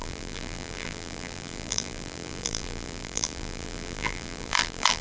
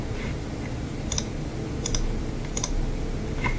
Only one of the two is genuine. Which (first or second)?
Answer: second